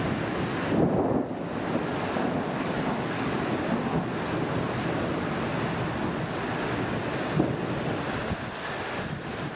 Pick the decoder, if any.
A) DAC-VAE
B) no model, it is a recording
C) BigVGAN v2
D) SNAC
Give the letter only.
B